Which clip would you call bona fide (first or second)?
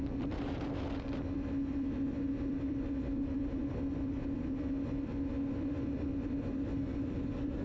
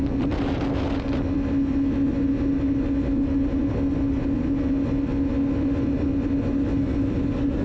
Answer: second